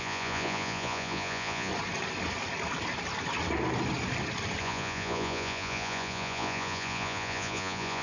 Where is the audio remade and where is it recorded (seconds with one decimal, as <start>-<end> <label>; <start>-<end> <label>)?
0.0-1.7 remade; 1.7-4.6 recorded; 4.6-8.0 remade